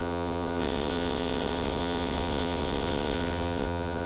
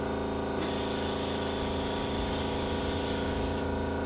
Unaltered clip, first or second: second